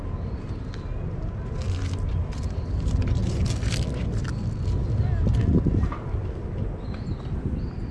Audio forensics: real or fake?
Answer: real